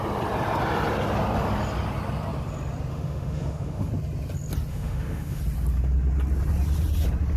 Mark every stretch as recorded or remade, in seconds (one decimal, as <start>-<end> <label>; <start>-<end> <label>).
0.0-2.9 recorded; 2.9-3.9 remade; 3.9-4.7 recorded; 4.7-5.4 remade; 5.4-7.4 recorded